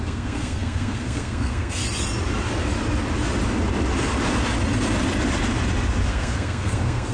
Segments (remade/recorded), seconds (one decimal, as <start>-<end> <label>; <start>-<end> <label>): 0.0-1.8 remade; 1.8-6.1 recorded; 6.1-7.1 remade